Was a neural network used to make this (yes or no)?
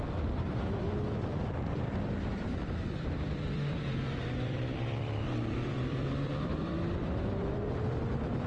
yes